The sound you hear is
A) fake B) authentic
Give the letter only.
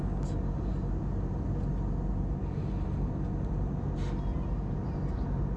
B